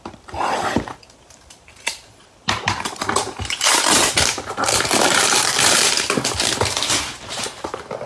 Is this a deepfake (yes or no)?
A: yes